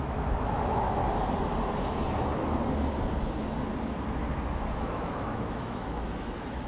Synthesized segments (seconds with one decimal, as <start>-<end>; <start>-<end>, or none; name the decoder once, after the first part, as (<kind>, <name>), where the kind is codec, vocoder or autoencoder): 0.0-1.0 (autoencoder, DAC-VAE); 4.5-6.7